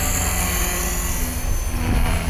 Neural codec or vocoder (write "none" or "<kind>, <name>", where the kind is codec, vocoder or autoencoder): none